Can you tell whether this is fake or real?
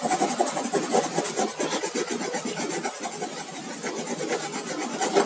real